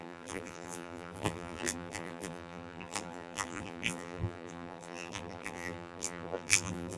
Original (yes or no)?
no